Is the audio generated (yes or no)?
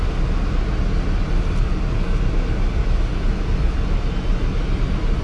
no